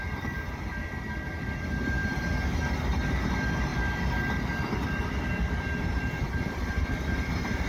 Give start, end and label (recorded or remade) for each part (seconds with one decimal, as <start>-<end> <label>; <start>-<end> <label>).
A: 0.0-7.7 recorded